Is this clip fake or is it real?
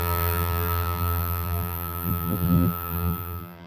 fake